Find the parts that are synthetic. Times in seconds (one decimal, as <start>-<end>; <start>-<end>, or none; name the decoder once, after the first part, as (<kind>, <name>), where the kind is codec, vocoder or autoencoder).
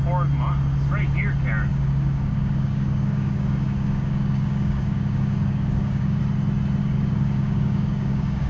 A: 1.7-6.2 (codec, DAC); 6.8-8.5